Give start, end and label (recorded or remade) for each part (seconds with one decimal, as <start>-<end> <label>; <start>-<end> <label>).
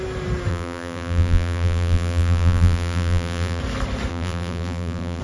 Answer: 0.0-0.5 recorded; 0.5-3.6 remade; 3.6-4.1 recorded; 4.1-5.2 remade